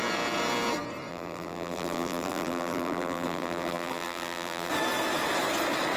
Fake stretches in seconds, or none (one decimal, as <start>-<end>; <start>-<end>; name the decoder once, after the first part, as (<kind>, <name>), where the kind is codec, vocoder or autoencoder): 1.1-4.7 (vocoder, BigVGAN v2)